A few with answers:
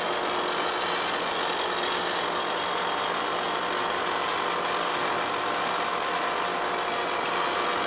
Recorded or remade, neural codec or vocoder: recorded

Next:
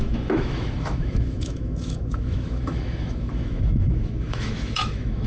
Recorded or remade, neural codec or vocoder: remade, autoencoder, DAC-VAE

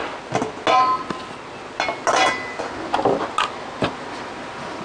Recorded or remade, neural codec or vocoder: recorded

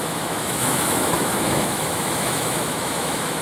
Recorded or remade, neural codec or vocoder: remade, autoencoder, DAC-VAE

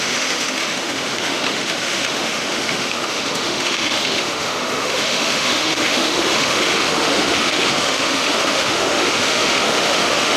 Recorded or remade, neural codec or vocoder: remade, autoencoder, DAC-VAE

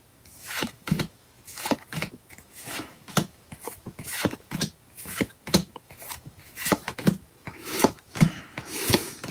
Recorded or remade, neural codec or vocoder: remade, autoencoder, DAC-VAE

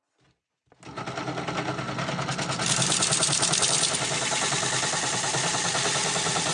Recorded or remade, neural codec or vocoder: recorded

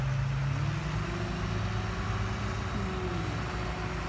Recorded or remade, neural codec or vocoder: recorded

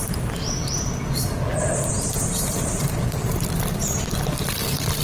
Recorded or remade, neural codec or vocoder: recorded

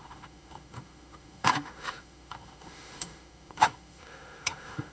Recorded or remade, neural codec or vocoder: remade, autoencoder, DAC-VAE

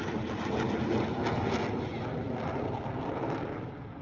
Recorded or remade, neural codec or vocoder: recorded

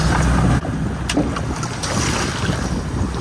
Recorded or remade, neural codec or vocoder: recorded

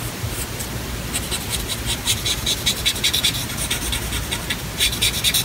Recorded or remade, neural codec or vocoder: recorded